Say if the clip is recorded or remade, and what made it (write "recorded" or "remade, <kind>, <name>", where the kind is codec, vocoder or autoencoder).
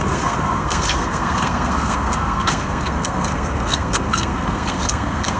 remade, codec, SNAC